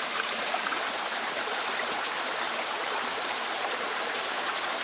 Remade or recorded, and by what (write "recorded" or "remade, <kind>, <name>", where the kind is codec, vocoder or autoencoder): remade, vocoder, BigVGAN v2